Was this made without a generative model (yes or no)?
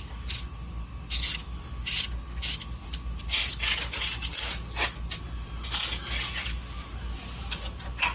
yes